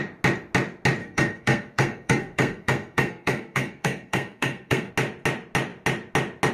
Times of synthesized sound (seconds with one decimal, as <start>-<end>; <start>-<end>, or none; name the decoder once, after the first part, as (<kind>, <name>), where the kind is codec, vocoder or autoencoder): 1.0-4.9 (codec, SNAC)